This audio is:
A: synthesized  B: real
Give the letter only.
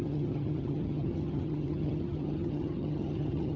A